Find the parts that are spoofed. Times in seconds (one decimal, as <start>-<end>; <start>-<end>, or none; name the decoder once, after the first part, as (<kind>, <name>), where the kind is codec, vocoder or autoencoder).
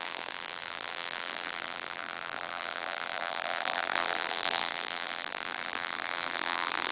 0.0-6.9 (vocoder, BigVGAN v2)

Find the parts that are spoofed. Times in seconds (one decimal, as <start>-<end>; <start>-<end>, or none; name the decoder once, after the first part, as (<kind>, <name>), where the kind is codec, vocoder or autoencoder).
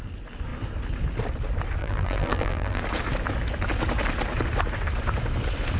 1.8-2.8 (vocoder, BigVGAN v2)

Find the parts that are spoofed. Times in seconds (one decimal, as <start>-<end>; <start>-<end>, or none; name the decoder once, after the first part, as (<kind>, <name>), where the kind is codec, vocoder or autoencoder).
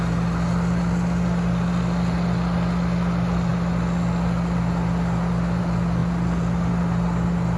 none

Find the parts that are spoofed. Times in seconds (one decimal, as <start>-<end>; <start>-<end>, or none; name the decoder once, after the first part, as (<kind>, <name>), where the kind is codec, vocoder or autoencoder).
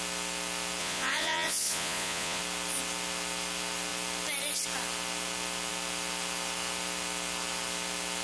0.8-2.4 (vocoder, Vocos)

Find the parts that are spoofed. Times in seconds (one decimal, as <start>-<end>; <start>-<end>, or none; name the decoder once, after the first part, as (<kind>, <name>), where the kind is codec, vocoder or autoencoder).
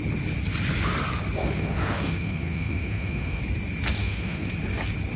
1.4-3.4 (autoencoder, DAC-VAE); 4.0-4.5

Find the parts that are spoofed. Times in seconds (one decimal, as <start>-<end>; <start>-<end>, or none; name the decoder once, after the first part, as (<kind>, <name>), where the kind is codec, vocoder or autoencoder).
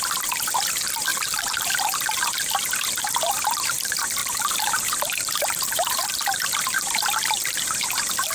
1.1-1.8 (vocoder, BigVGAN v2); 4.2-5.9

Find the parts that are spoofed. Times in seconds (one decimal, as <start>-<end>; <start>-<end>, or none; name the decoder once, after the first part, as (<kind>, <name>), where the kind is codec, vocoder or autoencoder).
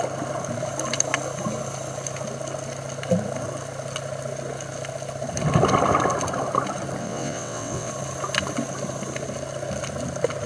7.0-7.9 (vocoder, WaveNeXt)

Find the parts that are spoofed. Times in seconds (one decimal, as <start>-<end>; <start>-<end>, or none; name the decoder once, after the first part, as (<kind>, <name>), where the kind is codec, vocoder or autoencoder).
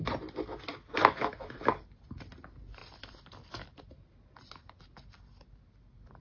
0.7-1.3 (codec, DAC)